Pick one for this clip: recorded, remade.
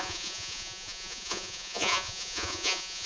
remade